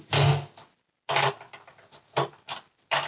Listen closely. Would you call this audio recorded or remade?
recorded